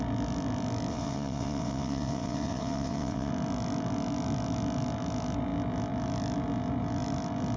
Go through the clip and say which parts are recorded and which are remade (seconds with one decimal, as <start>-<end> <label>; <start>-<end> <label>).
0.0-0.9 recorded; 0.9-3.3 remade; 3.3-7.6 recorded